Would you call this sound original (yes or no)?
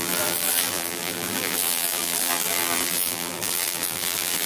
no